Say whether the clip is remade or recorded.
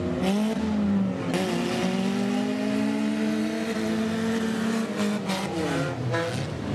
recorded